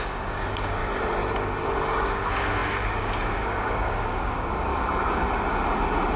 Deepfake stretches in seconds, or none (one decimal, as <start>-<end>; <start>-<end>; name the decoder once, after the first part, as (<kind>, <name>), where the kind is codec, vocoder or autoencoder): 0.0-0.8 (codec, DAC); 1.9-4.7